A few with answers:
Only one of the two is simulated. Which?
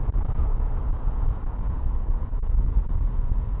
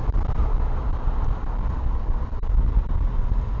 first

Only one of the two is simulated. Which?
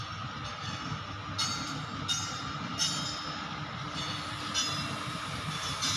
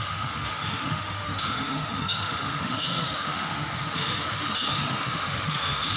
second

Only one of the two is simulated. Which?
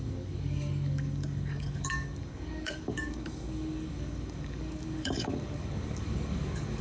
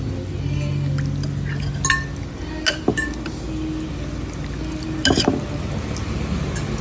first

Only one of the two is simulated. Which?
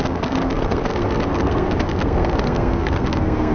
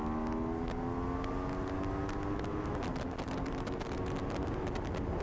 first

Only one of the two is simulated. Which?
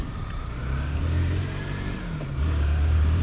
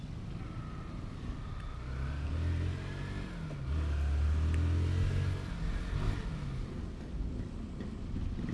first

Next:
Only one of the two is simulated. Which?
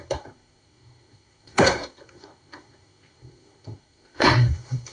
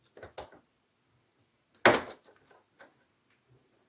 first